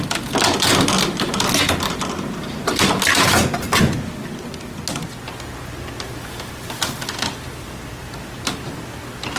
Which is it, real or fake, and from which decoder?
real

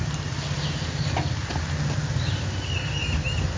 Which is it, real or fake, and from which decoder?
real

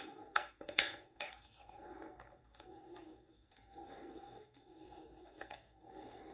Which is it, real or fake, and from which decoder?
fake, codec, SNAC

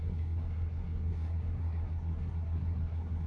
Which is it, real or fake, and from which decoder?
fake, codec, SNAC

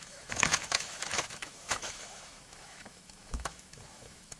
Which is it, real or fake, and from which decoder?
fake, autoencoder, DAC-VAE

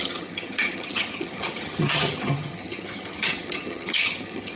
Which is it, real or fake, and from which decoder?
fake, vocoder, HiFi-GAN